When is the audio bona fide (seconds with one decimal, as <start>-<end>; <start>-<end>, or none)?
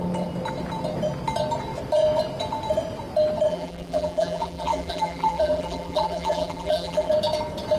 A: 0.0-3.5; 7.1-7.8